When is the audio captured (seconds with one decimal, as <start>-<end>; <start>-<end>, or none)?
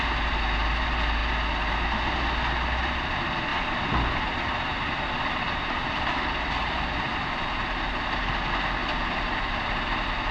0.0-3.5; 7.8-10.3